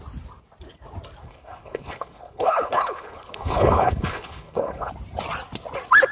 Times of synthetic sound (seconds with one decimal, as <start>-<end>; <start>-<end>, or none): 1.2-4.9